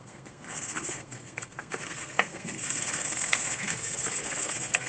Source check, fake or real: fake